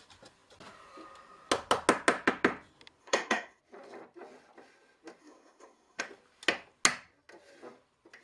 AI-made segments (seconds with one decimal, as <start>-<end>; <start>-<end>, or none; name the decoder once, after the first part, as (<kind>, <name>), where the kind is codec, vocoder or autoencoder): 3.0-3.6 (codec, SNAC); 5.2-6.0

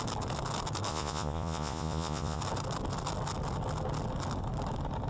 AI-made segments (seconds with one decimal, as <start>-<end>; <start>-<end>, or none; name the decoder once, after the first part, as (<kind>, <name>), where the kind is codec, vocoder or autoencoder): 0.9-2.4 (vocoder, Vocos)

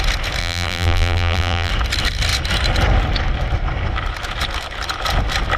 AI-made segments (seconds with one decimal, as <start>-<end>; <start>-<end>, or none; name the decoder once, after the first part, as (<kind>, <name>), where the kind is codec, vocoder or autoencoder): 0.4-1.7 (vocoder, BigVGAN v2)

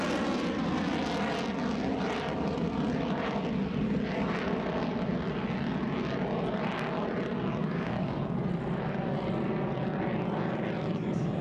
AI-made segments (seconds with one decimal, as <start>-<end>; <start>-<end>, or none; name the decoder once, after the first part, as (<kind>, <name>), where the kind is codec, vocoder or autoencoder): 7.6-8.2 (codec, DAC)

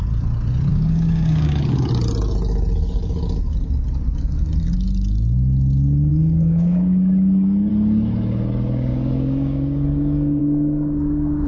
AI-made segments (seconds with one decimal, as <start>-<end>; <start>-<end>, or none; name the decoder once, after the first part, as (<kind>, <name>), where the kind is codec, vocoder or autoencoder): 0.7-1.9 (codec, DAC); 6.1-7.7; 8.9-10.4

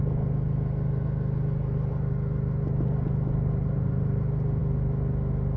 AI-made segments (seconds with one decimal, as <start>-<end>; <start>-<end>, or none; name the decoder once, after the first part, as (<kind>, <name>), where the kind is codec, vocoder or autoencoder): none